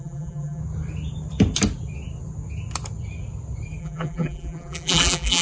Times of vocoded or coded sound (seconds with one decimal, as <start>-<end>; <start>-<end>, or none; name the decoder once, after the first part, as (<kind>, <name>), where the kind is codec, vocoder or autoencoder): 0.0-0.6 (vocoder, BigVGAN v2); 3.8-5.4